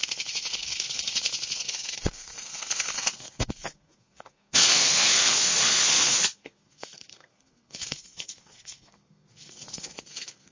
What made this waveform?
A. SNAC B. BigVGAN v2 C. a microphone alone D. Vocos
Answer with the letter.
A